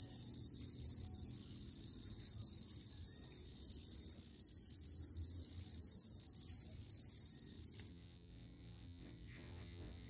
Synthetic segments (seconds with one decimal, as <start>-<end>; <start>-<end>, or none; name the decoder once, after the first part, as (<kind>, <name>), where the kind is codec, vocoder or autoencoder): 7.9-10.1 (vocoder, WaveNeXt)